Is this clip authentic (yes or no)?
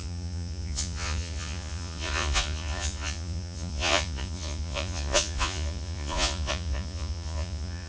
no